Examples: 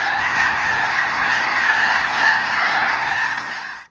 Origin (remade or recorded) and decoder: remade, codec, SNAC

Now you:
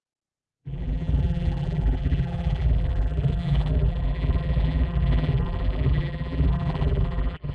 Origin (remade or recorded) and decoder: remade, vocoder, BigVGAN v2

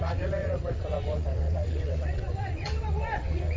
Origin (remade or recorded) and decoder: remade, vocoder, WaveNeXt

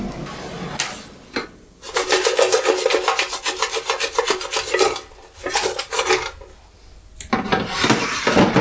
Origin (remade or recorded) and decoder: recorded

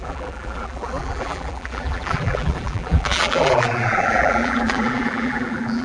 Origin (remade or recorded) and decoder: remade, vocoder, BigVGAN v2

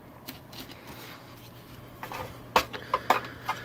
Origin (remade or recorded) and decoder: recorded